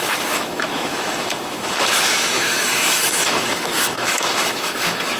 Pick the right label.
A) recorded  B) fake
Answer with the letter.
B